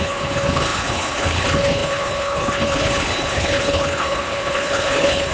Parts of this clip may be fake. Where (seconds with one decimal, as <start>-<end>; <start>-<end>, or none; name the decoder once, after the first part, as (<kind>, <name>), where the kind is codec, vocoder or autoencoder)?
0.0-5.3 (codec, HILCodec)